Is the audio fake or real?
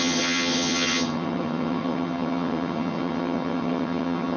fake